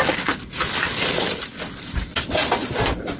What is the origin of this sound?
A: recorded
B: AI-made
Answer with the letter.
A